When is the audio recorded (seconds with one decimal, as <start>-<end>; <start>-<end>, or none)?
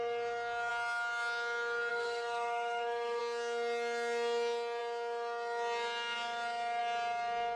0.0-1.9; 3.2-7.6